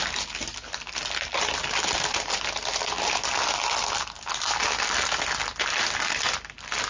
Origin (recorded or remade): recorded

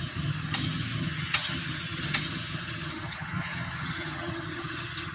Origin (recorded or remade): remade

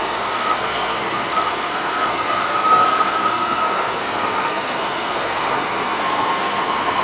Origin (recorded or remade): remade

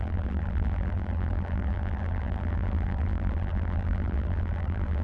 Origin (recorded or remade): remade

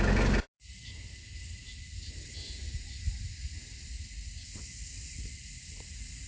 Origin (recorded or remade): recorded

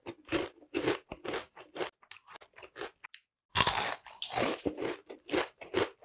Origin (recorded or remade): recorded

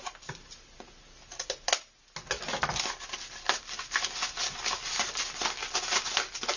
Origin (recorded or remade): recorded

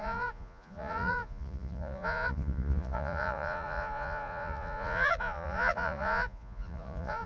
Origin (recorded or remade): remade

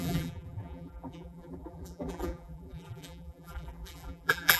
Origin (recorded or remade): remade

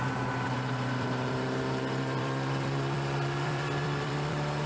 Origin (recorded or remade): remade